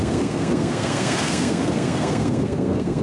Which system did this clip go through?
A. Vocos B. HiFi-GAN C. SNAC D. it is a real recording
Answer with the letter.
C